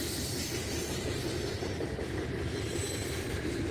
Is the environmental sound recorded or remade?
remade